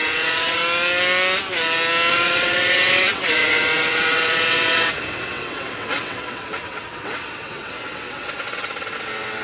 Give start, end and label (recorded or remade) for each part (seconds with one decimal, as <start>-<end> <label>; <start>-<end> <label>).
0.0-0.6 remade; 0.6-2.1 recorded; 2.1-9.4 remade